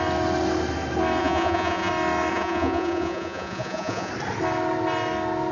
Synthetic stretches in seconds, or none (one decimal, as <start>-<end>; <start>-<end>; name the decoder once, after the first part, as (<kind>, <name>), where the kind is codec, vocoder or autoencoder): 1.2-1.9 (vocoder, Vocos); 2.3-4.1